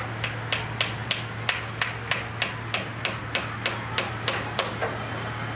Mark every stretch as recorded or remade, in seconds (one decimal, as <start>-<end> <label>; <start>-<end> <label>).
0.0-5.6 recorded